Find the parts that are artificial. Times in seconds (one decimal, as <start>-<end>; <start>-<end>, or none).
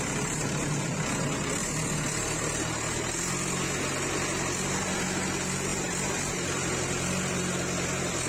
none